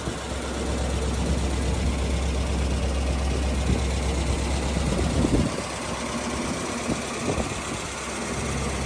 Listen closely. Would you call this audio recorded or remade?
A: recorded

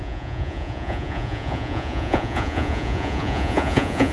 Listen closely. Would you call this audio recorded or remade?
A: remade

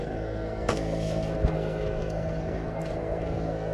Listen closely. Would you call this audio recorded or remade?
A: remade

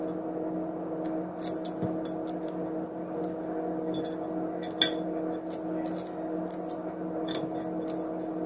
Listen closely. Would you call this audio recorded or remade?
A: recorded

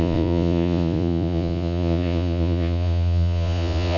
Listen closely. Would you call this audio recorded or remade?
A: remade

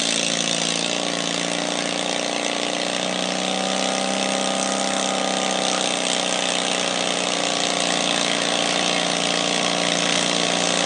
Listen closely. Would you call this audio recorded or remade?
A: recorded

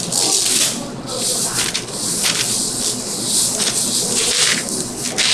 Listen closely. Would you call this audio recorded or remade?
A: recorded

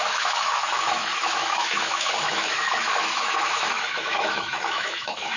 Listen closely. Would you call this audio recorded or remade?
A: remade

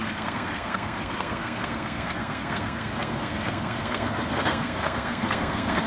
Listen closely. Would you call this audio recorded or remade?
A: remade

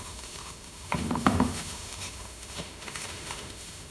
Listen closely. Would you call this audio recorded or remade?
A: remade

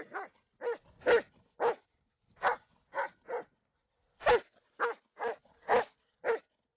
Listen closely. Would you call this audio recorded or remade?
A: recorded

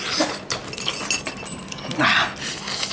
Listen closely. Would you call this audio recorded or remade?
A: recorded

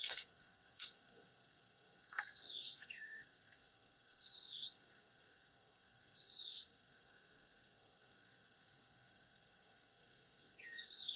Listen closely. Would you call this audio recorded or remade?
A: remade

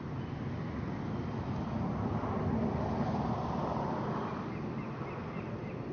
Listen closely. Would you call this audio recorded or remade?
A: recorded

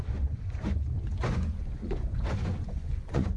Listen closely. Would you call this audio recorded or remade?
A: remade